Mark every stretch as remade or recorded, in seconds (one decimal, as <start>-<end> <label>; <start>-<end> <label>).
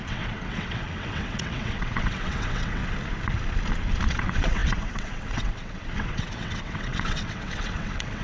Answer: 0.0-2.8 remade; 2.8-4.1 recorded; 4.1-8.2 remade